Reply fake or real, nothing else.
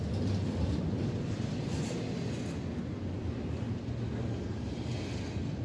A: real